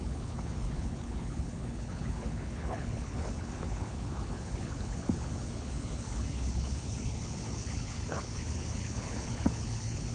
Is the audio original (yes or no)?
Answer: no